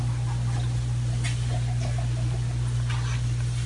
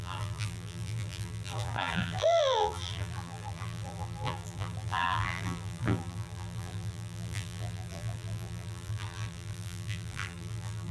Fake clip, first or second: second